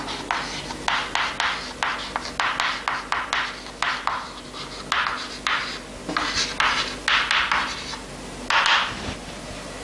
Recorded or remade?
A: recorded